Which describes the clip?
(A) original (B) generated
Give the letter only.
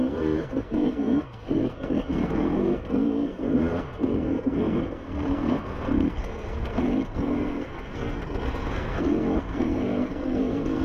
B